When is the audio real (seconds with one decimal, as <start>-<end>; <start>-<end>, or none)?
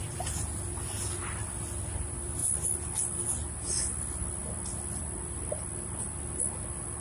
0.0-7.0